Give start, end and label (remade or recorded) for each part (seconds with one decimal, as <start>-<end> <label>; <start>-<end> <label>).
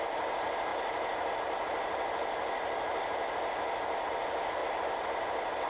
0.0-5.7 recorded